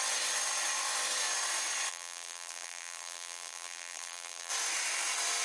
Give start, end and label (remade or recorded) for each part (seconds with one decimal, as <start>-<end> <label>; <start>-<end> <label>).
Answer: 0.0-1.9 recorded; 1.9-4.5 remade; 4.5-5.4 recorded